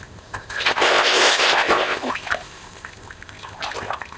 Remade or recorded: remade